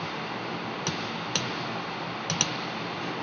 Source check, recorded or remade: recorded